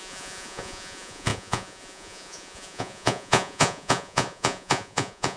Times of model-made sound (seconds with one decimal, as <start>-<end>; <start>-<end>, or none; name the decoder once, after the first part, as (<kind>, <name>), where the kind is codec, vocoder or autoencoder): 0.0-5.4 (vocoder, Vocos)